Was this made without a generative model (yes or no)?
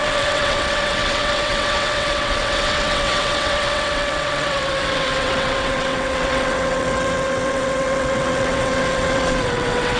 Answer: no